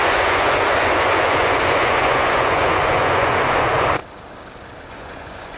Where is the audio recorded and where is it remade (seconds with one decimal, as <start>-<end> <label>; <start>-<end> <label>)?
0.0-4.0 remade; 4.0-4.9 recorded; 4.9-5.6 remade